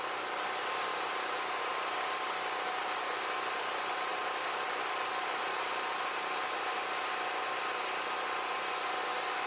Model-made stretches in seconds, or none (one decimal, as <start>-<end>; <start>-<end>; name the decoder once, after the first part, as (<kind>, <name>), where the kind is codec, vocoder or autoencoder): 0.9-1.7 (vocoder, BigVGAN v2); 4.1-7.4

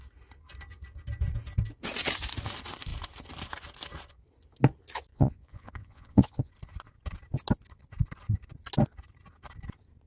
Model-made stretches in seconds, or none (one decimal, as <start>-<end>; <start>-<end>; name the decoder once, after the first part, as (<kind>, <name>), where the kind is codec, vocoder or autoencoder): 5.1-6.5 (vocoder, Vocos)

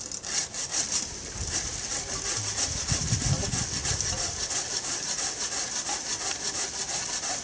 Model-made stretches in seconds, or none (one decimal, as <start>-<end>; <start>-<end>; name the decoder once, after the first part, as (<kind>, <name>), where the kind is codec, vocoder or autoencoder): none

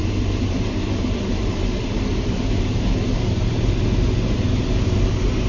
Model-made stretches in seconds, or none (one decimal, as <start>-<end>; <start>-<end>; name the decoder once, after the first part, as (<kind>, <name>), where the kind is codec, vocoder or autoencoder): 0.0-3.3 (vocoder, BigVGAN v2)

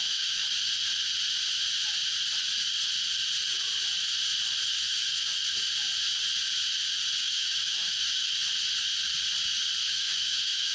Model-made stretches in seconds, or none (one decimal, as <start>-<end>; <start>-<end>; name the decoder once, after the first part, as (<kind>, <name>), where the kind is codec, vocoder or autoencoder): 0.0-0.4 (autoencoder, DAC-VAE); 4.8-5.3; 7.2-8.3; 9.9-10.7

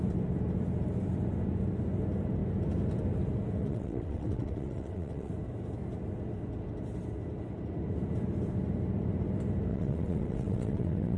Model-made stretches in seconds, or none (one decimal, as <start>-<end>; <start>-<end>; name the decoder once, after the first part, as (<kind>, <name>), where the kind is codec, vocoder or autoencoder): 3.6-5.3 (vocoder, WaveNeXt); 9.7-11.2